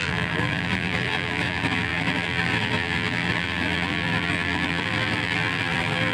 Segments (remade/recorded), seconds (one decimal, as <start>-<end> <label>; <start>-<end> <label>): 0.0-6.1 remade